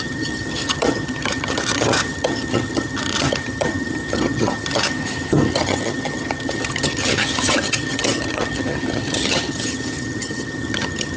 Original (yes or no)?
no